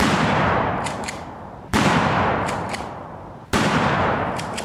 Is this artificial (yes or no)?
yes